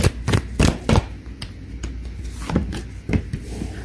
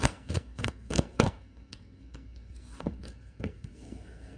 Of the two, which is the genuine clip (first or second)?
first